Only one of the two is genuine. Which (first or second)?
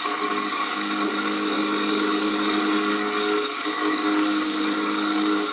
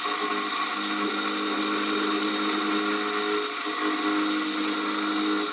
second